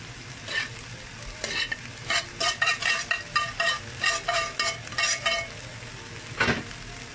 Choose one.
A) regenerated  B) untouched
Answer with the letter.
B